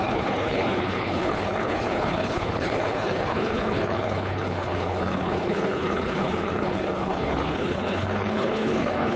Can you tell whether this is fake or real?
fake